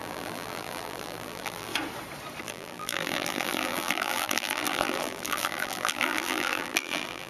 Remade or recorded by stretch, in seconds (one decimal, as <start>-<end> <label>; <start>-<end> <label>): 0.0-1.7 remade; 1.7-2.4 recorded; 2.4-7.3 remade